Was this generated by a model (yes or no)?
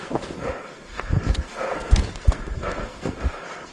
yes